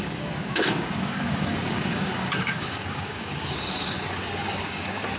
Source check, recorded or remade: remade